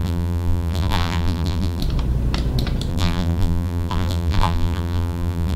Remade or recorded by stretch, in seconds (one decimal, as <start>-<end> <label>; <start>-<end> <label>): 0.0-1.8 remade; 1.8-2.9 recorded; 2.9-5.6 remade